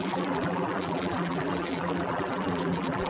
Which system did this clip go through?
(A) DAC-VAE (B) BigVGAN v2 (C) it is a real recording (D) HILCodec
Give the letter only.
B